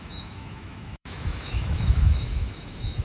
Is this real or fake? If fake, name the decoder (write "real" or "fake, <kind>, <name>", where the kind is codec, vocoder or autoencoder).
fake, autoencoder, DAC-VAE